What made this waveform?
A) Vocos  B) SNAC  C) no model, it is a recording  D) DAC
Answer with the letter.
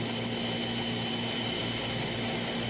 C